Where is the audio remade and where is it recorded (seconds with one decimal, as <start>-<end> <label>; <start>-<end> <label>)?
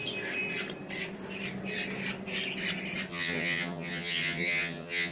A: 0.0-3.1 recorded; 3.1-5.1 remade